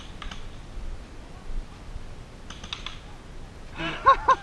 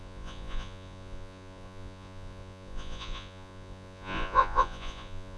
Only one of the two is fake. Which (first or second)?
second